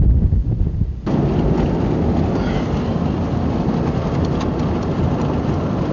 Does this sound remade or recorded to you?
recorded